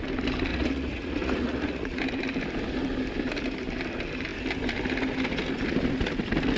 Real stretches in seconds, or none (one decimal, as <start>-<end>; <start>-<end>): 0.0-0.5; 2.0-6.6